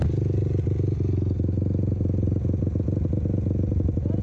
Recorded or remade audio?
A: recorded